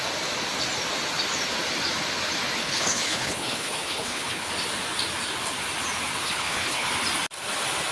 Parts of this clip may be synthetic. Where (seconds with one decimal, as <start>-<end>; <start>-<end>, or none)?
2.6-4.5; 6.2-6.9